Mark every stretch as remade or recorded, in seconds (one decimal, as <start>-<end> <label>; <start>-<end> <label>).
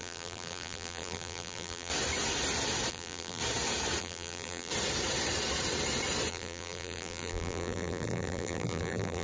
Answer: 0.0-1.9 remade; 1.9-2.9 recorded; 2.9-3.4 remade; 3.4-4.0 recorded; 4.0-4.7 remade; 4.7-6.3 recorded; 6.3-9.2 remade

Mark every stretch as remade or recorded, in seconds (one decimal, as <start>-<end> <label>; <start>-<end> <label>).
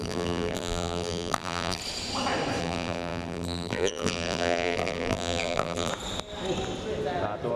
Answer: 0.0-1.8 remade; 1.8-2.6 recorded; 2.6-5.9 remade; 5.9-7.6 recorded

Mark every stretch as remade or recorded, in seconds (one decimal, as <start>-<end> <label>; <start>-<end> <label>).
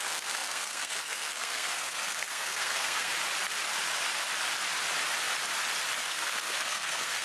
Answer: 0.0-3.1 remade; 3.1-6.0 recorded; 6.0-7.2 remade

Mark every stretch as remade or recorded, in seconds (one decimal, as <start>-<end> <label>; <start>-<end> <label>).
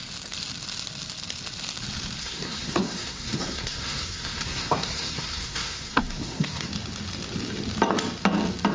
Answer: 0.0-2.2 recorded; 2.2-6.7 remade; 6.7-8.7 recorded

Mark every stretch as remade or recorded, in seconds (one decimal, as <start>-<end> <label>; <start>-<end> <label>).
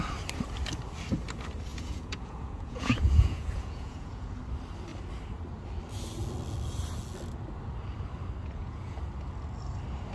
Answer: 0.0-1.7 recorded; 1.7-4.4 remade; 4.4-8.4 recorded; 8.4-9.0 remade; 9.0-10.1 recorded